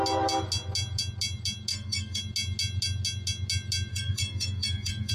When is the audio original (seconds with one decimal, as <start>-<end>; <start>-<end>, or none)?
0.0-1.7; 2.2-3.9